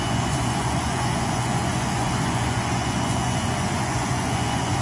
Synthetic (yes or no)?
yes